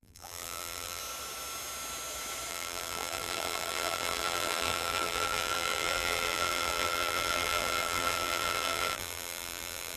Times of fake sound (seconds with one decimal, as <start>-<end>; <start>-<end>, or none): 0.0-1.0; 2.5-10.0